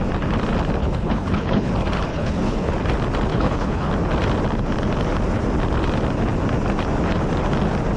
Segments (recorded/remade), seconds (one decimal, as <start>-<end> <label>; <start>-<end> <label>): 0.0-0.8 recorded; 0.8-1.7 remade; 1.7-2.1 recorded; 2.1-2.7 remade; 2.7-3.3 recorded; 3.3-3.9 remade; 3.9-8.0 recorded

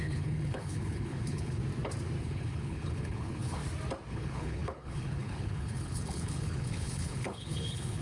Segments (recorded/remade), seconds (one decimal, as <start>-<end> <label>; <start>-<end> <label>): 0.0-1.6 remade; 1.6-2.2 recorded; 2.2-3.6 remade; 3.6-4.1 recorded; 4.1-8.0 remade

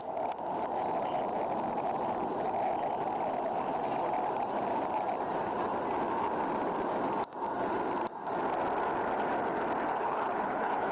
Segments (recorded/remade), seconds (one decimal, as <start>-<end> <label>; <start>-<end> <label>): 0.0-9.9 recorded; 9.9-10.9 remade

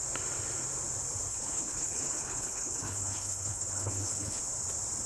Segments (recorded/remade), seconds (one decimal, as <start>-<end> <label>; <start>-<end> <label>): 0.0-1.3 recorded; 1.3-4.4 remade; 4.4-5.1 recorded

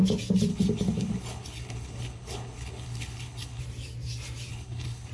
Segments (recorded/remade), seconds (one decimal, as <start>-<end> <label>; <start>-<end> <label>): 0.0-0.5 recorded; 0.5-3.6 remade; 3.6-4.5 recorded; 4.5-5.1 remade

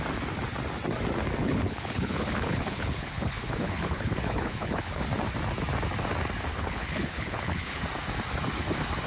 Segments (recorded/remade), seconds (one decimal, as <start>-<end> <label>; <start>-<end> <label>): 0.0-1.4 recorded; 1.4-5.0 remade; 5.0-6.5 recorded; 6.5-7.8 remade; 7.8-9.1 recorded

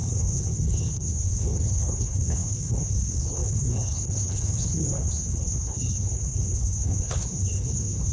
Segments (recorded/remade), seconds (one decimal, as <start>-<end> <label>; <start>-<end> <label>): 0.0-8.1 remade